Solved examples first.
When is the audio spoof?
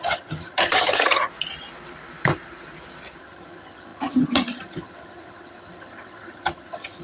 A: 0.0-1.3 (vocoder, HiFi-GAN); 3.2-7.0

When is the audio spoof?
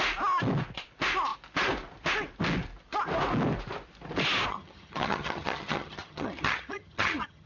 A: 4.5-7.5 (vocoder, HiFi-GAN)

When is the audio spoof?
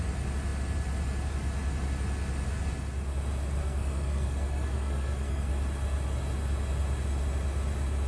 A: 3.6-5.5 (codec, SNAC)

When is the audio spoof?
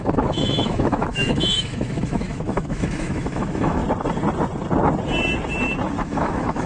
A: 0.0-3.8 (autoencoder, DAC-VAE); 6.0-6.7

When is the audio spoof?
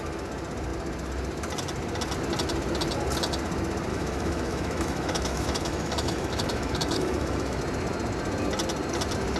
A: 3.9-7.6 (autoencoder, DAC-VAE)